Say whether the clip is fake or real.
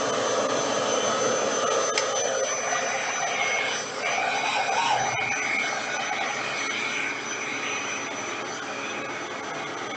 real